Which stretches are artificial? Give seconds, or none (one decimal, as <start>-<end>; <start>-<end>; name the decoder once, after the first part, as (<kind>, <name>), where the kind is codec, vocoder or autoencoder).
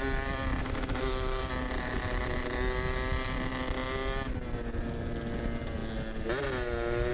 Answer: 0.6-1.5 (autoencoder, DAC-VAE)